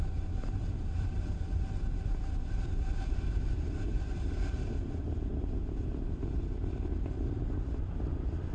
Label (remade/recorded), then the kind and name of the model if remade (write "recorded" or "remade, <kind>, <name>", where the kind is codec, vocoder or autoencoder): recorded